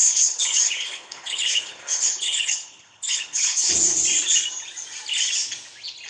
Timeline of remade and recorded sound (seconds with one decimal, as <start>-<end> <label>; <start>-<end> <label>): 0.0-3.7 remade; 3.7-6.1 recorded